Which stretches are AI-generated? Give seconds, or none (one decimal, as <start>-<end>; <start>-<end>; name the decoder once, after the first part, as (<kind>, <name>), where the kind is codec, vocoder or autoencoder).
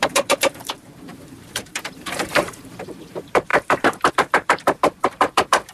0.0-5.7 (vocoder, BigVGAN v2)